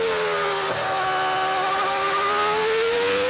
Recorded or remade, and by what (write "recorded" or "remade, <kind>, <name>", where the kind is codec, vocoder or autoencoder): recorded